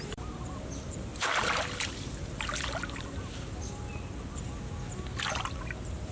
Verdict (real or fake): real